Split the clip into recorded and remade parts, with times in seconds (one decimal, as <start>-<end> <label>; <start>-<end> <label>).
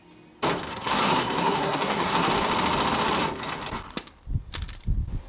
0.0-0.7 recorded; 0.7-2.3 remade; 2.3-5.3 recorded